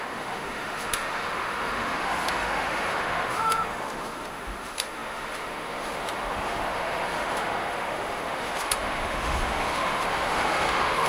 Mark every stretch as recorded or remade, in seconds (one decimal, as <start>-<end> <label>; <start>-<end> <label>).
0.0-11.1 remade

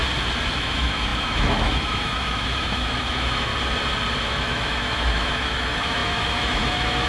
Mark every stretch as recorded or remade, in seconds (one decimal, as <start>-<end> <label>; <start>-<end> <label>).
0.0-0.5 recorded; 0.5-3.5 remade; 3.5-4.2 recorded; 4.2-7.1 remade

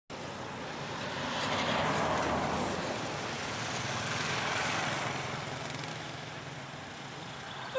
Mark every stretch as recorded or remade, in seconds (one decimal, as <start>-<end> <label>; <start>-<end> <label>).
0.0-5.9 recorded; 5.9-6.4 remade; 6.4-7.8 recorded

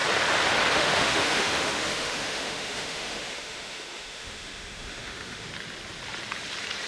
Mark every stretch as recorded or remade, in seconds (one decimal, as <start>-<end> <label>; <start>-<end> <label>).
0.0-0.7 recorded; 0.7-5.5 remade; 5.5-6.9 recorded

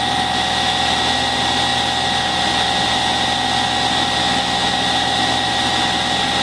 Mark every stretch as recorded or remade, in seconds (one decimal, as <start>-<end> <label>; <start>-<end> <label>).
0.0-6.4 recorded

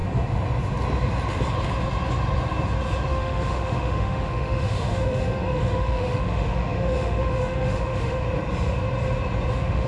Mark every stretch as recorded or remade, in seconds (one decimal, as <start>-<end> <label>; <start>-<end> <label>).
0.0-3.1 recorded; 3.1-8.2 remade; 8.2-9.5 recorded; 9.5-9.9 remade